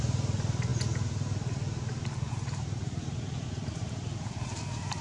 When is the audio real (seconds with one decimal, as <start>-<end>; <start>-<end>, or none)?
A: 0.0-5.0

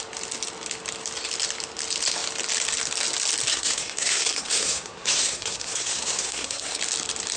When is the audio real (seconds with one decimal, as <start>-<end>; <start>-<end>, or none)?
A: 0.0-3.5; 6.8-7.4